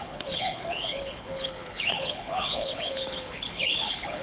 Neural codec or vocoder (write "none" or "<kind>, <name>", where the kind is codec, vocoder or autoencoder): codec, HILCodec